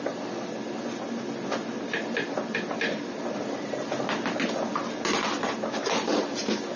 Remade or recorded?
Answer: recorded